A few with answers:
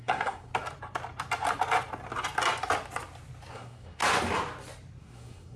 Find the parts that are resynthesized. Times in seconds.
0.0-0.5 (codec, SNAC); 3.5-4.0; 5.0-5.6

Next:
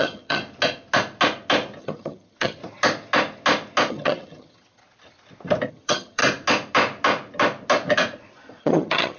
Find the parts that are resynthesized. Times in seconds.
0.0-0.4 (vocoder, HiFi-GAN); 1.8-2.6; 3.9-4.8; 5.7-6.2; 8.6-9.2

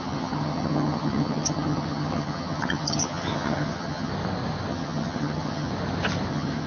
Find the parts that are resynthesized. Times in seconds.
0.0-4.1 (vocoder, HiFi-GAN); 4.7-5.7; 6.3-6.7